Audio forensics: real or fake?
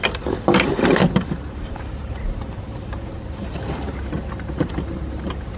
fake